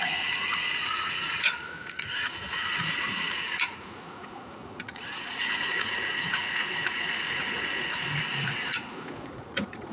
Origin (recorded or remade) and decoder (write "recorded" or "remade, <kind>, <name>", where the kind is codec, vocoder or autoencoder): remade, vocoder, Vocos